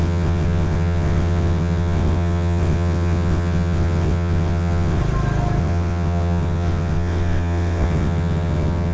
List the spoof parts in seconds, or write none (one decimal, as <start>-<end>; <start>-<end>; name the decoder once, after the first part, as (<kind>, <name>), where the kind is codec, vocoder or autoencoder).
0.0-5.0 (vocoder, WaveNeXt); 5.6-8.9